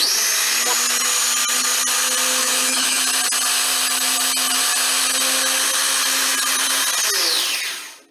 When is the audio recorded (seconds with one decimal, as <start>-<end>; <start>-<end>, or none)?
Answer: 0.0-2.4; 3.0-8.1